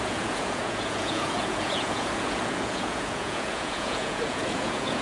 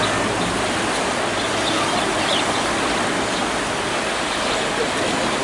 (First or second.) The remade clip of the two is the first